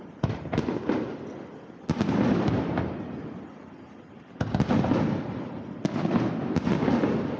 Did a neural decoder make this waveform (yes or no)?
no